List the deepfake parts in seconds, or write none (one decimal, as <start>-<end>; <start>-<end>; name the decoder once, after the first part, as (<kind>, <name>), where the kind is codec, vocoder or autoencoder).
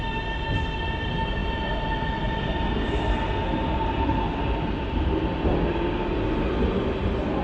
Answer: none